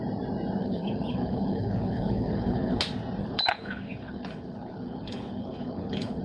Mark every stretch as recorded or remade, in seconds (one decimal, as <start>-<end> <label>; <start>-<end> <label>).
0.0-0.6 recorded; 0.6-2.8 remade; 2.8-3.2 recorded; 3.2-6.2 remade